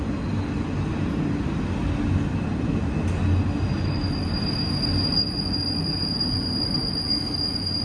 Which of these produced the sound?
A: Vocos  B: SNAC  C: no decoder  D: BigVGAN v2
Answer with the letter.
C